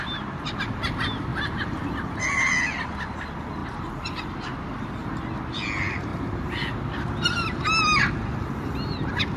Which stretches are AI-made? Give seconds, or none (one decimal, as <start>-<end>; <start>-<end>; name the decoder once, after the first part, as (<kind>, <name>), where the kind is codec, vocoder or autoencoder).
1.3-1.9 (vocoder, BigVGAN v2)